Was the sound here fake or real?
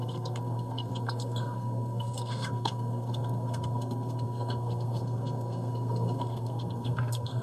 fake